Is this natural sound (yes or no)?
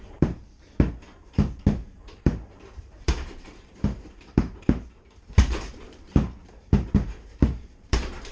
no